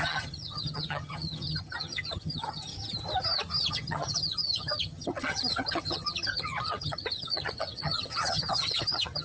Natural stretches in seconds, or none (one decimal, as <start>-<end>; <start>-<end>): 2.7-3.7